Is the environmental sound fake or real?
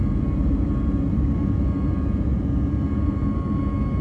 real